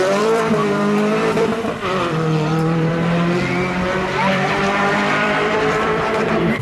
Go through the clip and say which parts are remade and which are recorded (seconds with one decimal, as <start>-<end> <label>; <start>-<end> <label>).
0.0-2.9 remade; 2.9-4.3 recorded; 4.3-6.6 remade